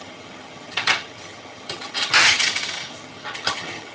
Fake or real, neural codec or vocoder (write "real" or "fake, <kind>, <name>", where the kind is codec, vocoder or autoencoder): fake, vocoder, HiFi-GAN